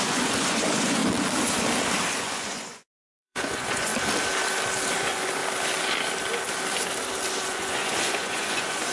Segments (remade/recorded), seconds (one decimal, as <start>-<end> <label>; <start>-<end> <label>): 0.0-1.0 remade; 1.0-2.1 recorded; 2.1-3.9 remade; 3.9-5.0 recorded; 5.0-5.4 remade; 5.4-7.3 recorded; 7.3-8.9 remade